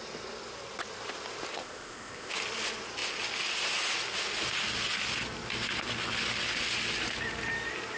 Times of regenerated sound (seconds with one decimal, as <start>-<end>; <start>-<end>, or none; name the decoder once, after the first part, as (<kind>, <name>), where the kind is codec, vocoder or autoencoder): 1.5-2.3 (codec, ZipCodec)